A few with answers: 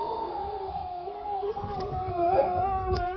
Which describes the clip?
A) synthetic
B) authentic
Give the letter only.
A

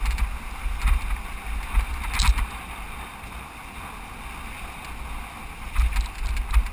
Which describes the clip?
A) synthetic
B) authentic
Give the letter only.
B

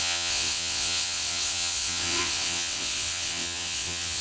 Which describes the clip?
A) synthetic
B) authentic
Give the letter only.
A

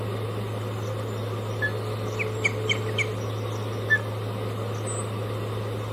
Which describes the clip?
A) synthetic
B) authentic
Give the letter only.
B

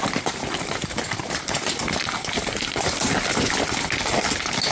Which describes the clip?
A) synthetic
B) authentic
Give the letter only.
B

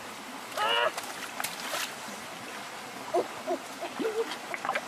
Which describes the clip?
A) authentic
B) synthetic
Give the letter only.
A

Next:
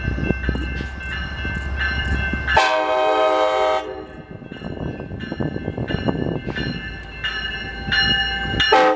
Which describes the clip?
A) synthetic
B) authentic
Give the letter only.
B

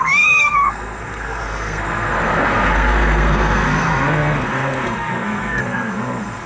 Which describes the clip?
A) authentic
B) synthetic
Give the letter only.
B